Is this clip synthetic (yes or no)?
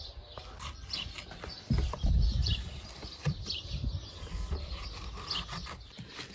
no